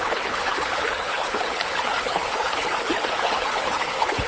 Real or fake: fake